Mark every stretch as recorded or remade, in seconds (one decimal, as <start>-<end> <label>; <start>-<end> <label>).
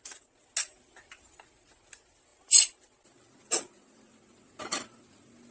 0.0-5.5 recorded